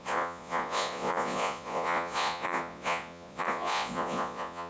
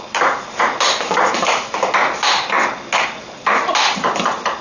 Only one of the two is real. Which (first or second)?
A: second